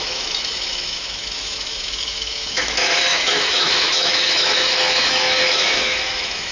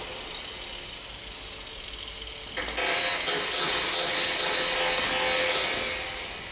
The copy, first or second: first